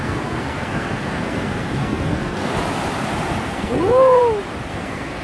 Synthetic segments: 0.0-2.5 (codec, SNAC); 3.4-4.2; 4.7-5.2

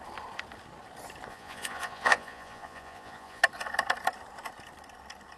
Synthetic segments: 1.3-3.4 (vocoder, Vocos)

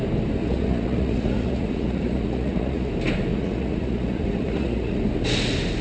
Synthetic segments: 0.4-2.9 (vocoder, Vocos); 3.3-5.0

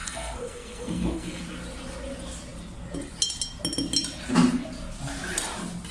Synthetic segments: 0.0-1.4 (codec, SNAC)

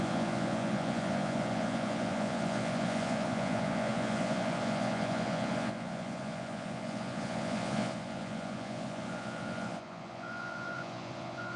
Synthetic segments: 0.0-11.6 (vocoder, Vocos)

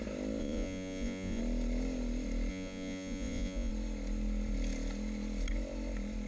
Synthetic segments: 0.4-1.4 (vocoder, Vocos); 2.5-3.7

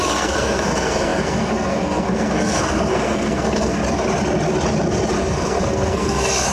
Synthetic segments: 0.0-3.8 (codec, SNAC); 5.2-6.5